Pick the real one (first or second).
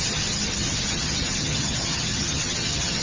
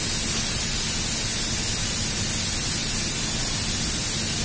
second